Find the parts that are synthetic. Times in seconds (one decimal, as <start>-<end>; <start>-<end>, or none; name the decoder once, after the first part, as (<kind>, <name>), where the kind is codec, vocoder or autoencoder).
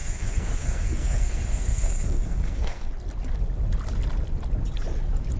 0.0-2.9 (codec, SNAC)